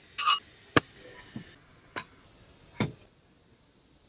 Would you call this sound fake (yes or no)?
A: no